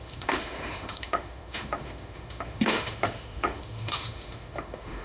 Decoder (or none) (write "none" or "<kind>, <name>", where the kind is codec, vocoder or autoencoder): autoencoder, DAC-VAE